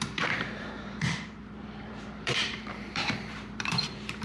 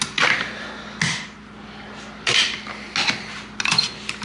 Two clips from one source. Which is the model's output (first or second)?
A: first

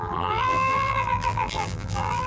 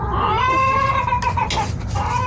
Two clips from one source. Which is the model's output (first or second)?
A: first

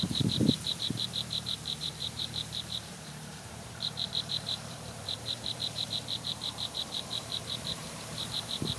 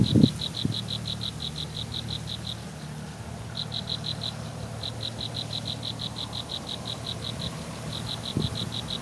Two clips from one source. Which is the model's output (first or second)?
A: first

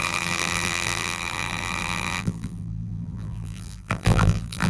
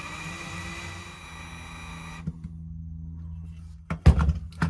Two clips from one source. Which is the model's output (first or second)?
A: first